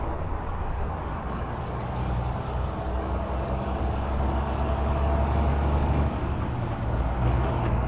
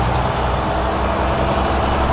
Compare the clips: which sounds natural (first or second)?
second